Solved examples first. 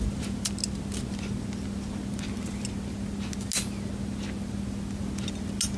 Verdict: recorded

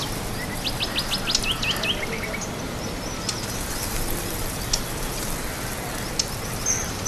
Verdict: recorded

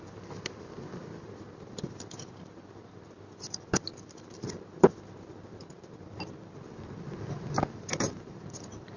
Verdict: remade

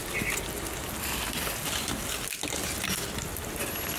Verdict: recorded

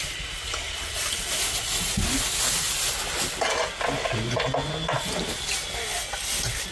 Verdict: recorded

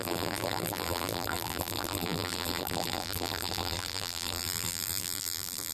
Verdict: remade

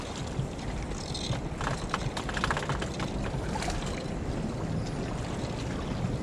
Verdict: recorded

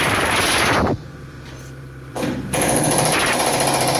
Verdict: remade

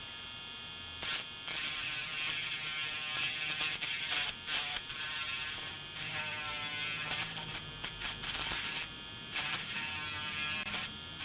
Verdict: remade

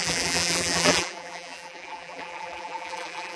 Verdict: remade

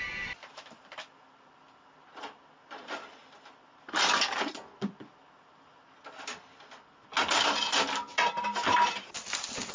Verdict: recorded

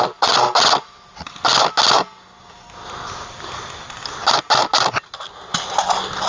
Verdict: recorded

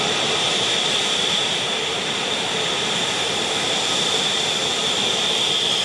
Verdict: remade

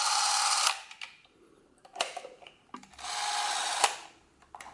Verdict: recorded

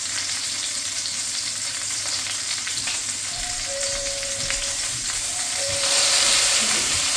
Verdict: remade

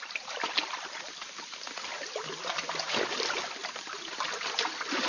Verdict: remade